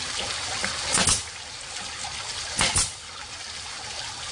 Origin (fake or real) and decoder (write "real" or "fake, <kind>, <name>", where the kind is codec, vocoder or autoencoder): real